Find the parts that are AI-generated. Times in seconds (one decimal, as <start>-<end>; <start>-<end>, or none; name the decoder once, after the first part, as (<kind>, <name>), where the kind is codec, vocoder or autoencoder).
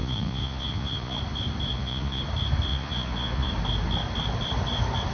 0.0-1.2 (vocoder, Vocos); 1.7-2.2; 2.7-3.5